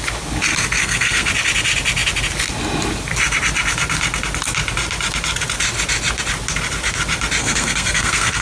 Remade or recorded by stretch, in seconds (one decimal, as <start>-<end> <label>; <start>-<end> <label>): 0.0-0.8 recorded; 0.8-1.3 remade; 1.3-7.4 recorded; 7.4-8.4 remade